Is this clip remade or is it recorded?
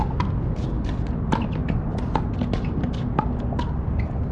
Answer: recorded